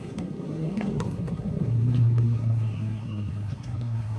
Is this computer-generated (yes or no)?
yes